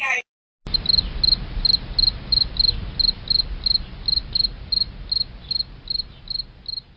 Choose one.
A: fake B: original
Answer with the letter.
B